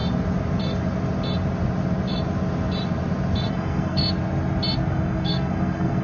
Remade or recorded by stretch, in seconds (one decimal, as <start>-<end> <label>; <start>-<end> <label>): 0.0-3.5 recorded; 3.5-4.0 remade; 4.0-4.9 recorded; 4.9-6.0 remade